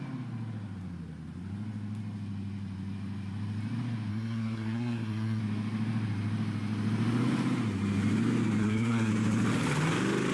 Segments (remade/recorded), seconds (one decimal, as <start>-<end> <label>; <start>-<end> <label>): 0.0-4.1 recorded; 4.1-5.4 remade; 5.4-8.6 recorded; 8.6-9.1 remade; 9.1-10.3 recorded